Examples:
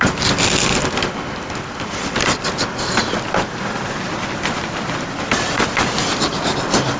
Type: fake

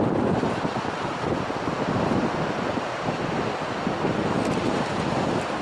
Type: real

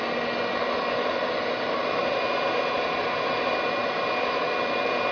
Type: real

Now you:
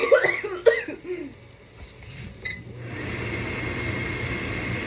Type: real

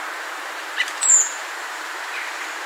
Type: fake